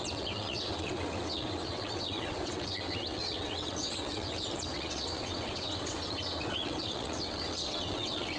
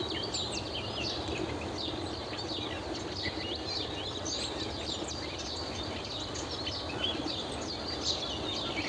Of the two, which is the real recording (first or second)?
second